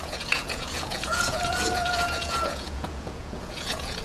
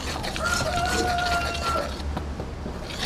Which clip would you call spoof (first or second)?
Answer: first